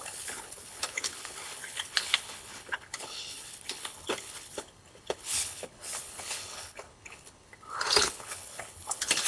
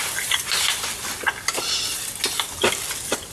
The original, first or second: second